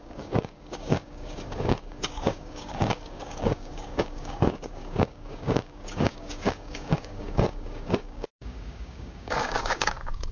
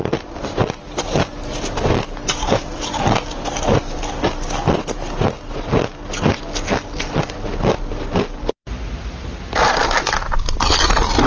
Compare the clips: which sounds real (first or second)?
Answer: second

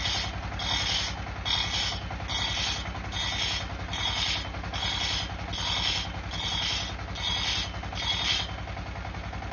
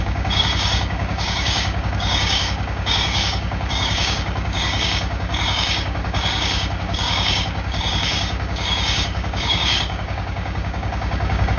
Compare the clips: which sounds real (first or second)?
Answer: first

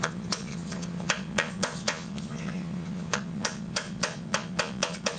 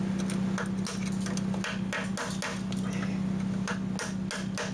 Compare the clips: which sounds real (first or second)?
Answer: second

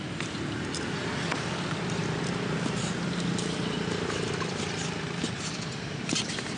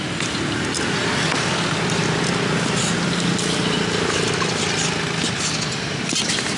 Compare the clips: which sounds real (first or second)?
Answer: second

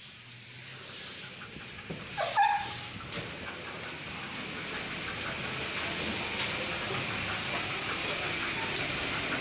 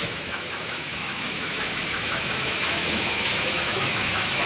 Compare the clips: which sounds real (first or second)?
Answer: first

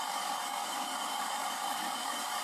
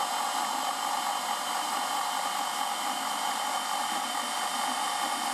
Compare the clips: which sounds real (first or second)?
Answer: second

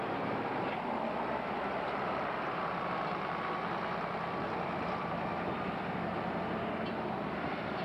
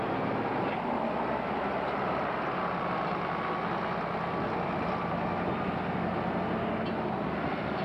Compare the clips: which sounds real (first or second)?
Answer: second